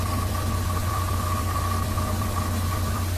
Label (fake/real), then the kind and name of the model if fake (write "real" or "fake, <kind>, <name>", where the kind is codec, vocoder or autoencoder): fake, vocoder, BigVGAN v2